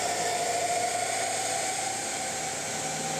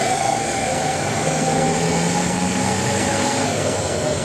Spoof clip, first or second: second